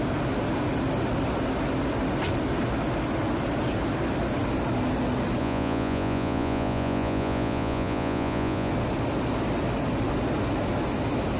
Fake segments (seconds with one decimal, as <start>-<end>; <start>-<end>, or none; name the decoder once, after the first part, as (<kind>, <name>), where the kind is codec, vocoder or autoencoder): 5.4-8.7 (vocoder, Vocos)